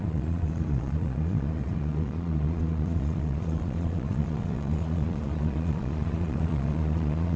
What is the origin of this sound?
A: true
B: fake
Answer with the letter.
B